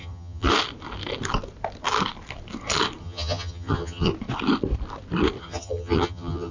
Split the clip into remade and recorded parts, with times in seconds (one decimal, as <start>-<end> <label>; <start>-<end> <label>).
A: 0.0-0.5 remade; 0.5-3.0 recorded; 3.0-4.1 remade; 4.1-5.4 recorded; 5.4-6.5 remade